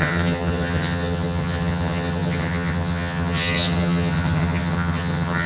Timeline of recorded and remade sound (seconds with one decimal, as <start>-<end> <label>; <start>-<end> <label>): 0.0-5.5 remade